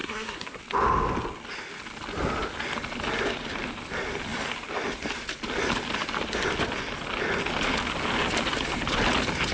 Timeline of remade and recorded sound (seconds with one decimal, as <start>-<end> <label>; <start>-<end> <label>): 0.0-0.6 remade; 0.6-9.5 recorded